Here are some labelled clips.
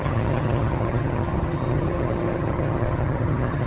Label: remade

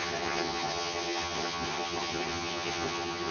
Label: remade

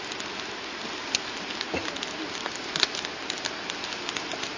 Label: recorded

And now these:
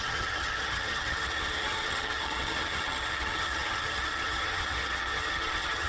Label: remade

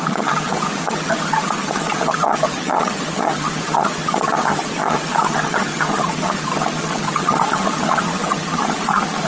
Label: remade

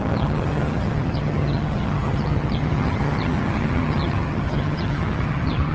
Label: remade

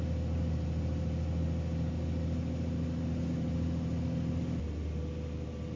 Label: recorded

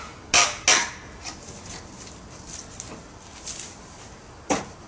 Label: recorded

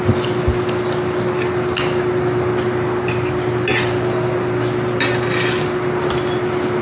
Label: recorded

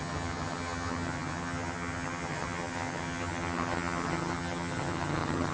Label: remade